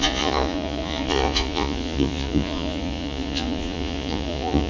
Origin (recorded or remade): remade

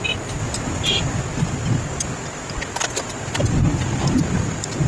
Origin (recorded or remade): recorded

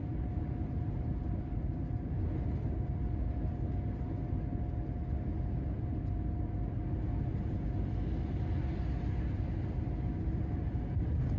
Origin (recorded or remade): recorded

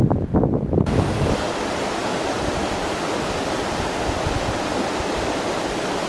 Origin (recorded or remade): recorded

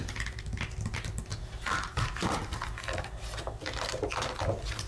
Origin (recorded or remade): recorded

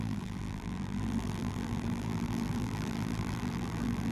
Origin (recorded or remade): remade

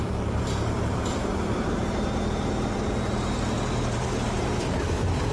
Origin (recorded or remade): remade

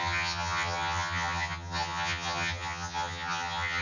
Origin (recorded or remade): remade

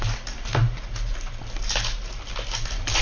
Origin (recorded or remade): remade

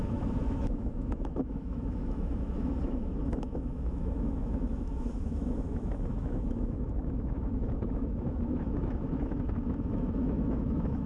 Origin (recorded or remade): remade